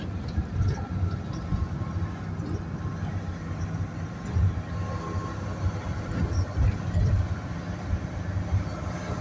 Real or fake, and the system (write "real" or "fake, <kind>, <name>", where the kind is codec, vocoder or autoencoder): real